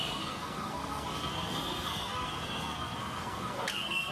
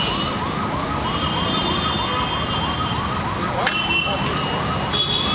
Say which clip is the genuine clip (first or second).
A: second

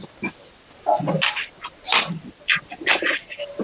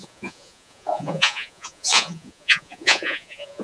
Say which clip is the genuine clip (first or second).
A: first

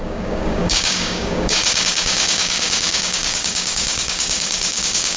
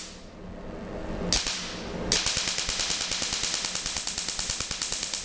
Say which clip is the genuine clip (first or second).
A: second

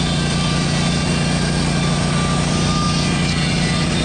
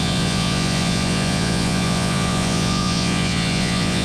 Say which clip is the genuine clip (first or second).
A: first